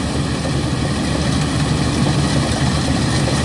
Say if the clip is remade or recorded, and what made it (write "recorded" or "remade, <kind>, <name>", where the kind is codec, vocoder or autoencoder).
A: recorded